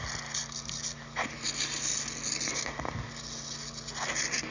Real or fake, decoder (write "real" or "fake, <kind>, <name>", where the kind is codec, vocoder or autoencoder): real